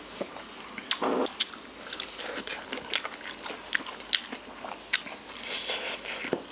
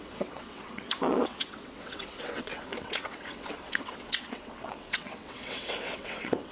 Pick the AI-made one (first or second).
second